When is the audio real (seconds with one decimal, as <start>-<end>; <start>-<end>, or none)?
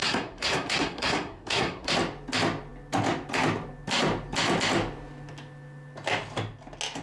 1.9-7.0